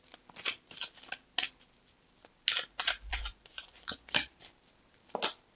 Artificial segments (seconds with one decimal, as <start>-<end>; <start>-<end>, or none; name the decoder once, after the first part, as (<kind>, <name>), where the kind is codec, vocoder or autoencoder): 3.1-4.1 (vocoder, Vocos)